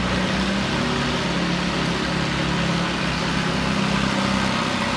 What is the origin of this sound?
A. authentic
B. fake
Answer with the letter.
A